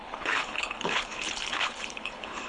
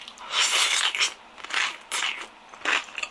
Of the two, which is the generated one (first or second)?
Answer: first